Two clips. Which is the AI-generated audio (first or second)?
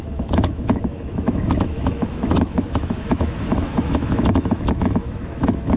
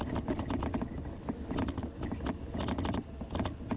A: first